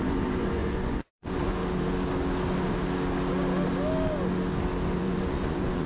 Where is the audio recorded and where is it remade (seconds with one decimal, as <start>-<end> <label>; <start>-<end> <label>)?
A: 0.0-1.6 remade; 1.6-5.0 recorded; 5.0-5.9 remade